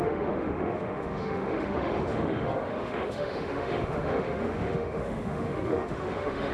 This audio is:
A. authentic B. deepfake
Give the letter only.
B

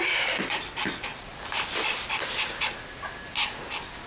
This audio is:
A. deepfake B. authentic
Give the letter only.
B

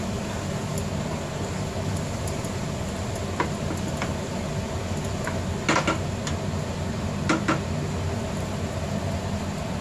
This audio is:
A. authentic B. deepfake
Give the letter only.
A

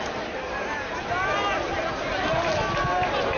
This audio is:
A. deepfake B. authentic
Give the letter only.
B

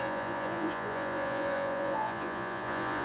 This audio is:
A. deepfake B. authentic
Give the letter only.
A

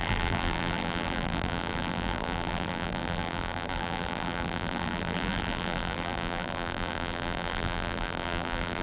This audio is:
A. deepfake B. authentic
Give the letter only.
A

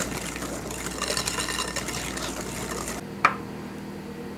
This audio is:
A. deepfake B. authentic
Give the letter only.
B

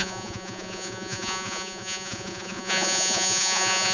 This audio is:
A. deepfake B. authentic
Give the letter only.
A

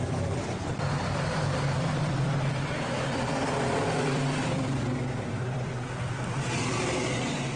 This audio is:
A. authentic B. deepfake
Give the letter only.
B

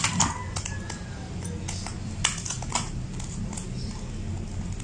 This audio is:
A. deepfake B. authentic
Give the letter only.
B